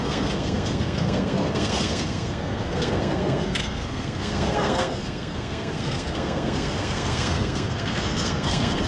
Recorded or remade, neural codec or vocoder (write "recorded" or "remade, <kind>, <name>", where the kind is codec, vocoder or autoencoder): remade, codec, SNAC